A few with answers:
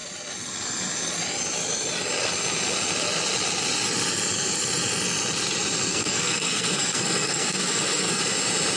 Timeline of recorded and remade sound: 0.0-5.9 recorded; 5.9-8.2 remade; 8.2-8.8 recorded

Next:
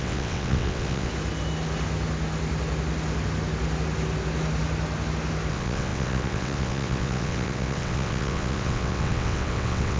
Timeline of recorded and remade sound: 0.0-1.1 remade; 1.1-5.5 recorded; 5.5-10.0 remade

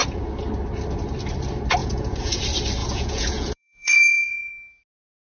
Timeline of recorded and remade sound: 0.0-1.8 recorded; 1.8-2.4 remade; 2.4-2.8 recorded; 2.8-4.5 remade; 4.5-5.2 recorded

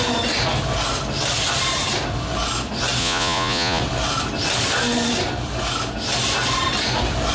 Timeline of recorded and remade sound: 0.0-3.0 recorded; 3.0-3.8 remade; 3.8-7.3 recorded